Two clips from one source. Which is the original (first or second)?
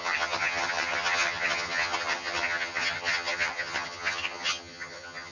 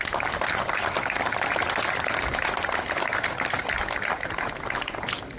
second